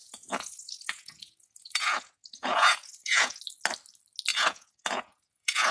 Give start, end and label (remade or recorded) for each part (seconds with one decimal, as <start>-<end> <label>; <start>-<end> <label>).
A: 0.0-3.4 remade; 3.4-4.3 recorded; 4.3-5.7 remade